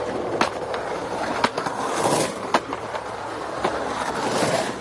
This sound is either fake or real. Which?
real